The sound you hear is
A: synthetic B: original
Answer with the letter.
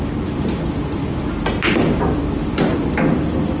B